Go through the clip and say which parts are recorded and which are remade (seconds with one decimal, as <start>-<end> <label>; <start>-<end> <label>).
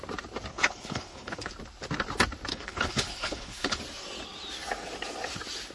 0.0-0.5 recorded; 0.5-1.5 remade; 1.5-2.5 recorded; 2.5-3.8 remade; 3.8-5.7 recorded